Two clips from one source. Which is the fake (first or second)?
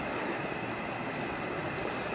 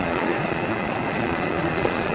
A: second